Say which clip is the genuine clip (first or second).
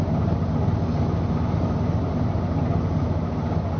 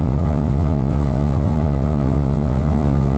first